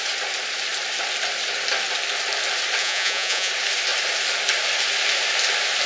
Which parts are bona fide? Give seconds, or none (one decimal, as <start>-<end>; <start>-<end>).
0.0-2.8; 3.5-5.9